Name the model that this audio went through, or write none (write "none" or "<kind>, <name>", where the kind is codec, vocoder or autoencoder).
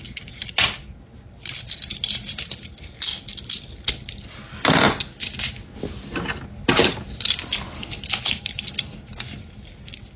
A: none